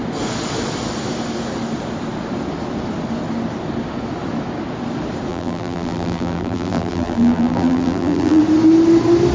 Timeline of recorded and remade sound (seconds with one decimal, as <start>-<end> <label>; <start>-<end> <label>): 0.0-5.3 recorded; 5.3-8.4 remade; 8.4-9.3 recorded